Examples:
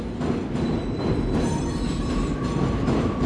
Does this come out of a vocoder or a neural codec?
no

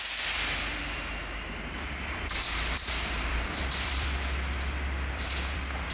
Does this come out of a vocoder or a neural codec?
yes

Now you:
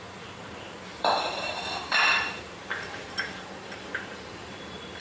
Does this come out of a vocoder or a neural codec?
yes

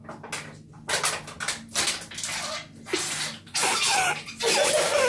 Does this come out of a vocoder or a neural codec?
no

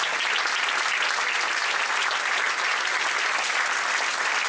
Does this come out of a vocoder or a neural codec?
no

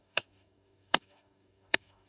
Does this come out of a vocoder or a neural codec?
yes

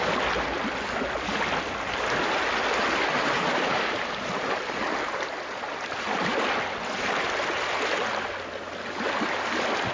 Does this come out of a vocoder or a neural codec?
no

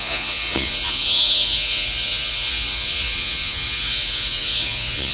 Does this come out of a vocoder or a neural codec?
yes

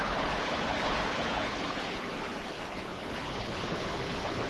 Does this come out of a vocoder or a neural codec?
yes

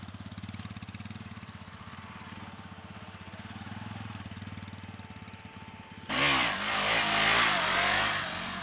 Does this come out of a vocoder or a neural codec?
no